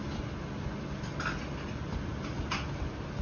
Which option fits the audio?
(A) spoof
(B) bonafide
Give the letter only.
B